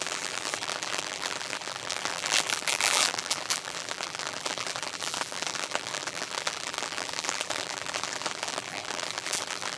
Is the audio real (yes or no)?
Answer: no